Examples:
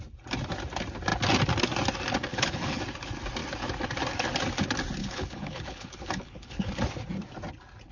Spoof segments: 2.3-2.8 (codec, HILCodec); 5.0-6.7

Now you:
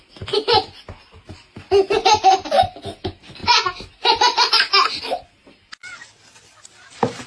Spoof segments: none

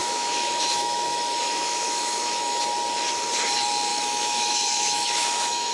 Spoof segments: 0.0-2.6 (autoencoder, DAC-VAE); 3.9-5.7

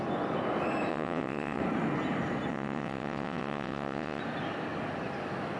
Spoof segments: 0.9-1.6 (vocoder, WaveNeXt); 2.5-4.2

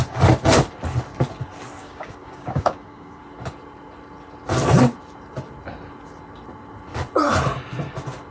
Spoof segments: 1.8-3.2 (codec, DAC)